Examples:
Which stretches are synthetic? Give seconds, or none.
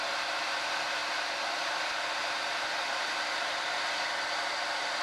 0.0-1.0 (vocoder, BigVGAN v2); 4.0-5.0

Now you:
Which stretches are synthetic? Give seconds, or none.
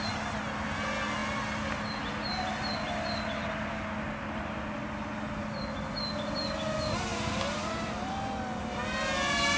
7.1-8.1 (vocoder, BigVGAN v2); 8.6-9.6